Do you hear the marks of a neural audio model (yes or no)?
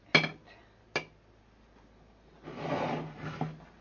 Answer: no